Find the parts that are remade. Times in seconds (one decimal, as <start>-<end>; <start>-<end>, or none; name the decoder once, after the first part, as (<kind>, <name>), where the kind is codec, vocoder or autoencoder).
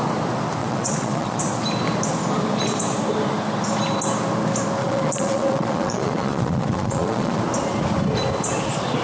0.6-1.4 (vocoder, Vocos); 4.8-7.4